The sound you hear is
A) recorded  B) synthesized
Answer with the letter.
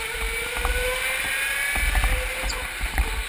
A